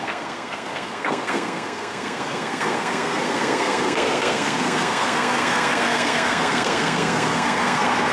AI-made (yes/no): yes